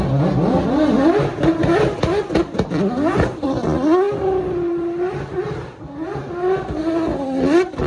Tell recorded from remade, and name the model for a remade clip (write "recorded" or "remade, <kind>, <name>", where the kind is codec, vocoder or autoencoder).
recorded